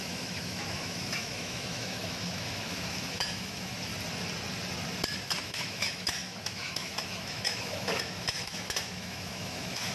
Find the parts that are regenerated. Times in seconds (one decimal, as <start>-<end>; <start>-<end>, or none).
0.0-3.9; 5.4-9.9